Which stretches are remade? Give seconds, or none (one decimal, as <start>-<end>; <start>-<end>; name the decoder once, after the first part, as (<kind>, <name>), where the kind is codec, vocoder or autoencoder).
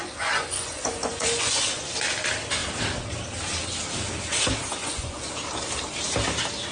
0.0-1.9 (vocoder, Vocos); 4.8-5.3